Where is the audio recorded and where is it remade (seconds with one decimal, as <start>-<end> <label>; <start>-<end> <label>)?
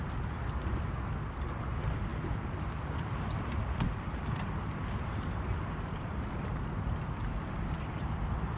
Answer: 0.0-8.6 recorded